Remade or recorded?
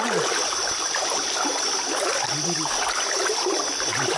recorded